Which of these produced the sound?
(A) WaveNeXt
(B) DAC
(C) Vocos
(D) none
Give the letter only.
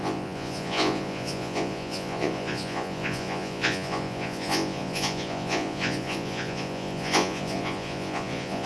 C